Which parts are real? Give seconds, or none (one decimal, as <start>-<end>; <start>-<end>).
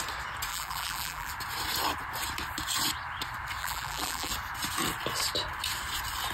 0.0-0.5; 1.3-3.6; 4.3-6.3